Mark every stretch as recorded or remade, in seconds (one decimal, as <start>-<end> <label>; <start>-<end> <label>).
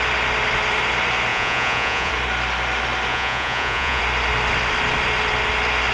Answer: 0.0-1.3 recorded; 1.3-2.1 remade; 2.1-3.1 recorded; 3.1-4.0 remade; 4.0-5.9 recorded